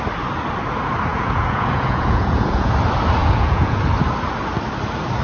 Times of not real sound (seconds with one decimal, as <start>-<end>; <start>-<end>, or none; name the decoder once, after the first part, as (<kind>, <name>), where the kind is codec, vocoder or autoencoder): 1.1-2.7 (vocoder, Vocos); 3.2-3.8